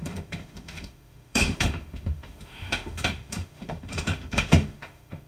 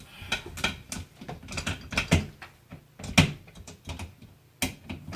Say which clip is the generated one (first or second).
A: first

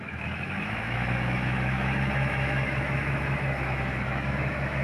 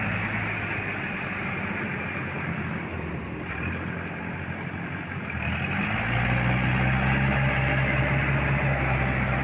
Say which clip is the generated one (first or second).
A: first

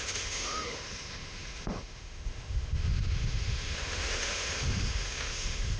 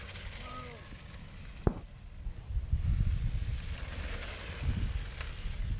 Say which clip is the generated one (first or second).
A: first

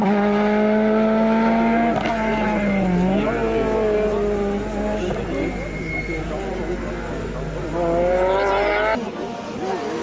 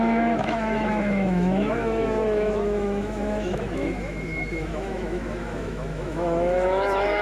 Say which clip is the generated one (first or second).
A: second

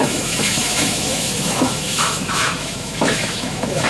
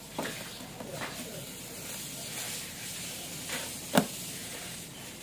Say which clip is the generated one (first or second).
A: first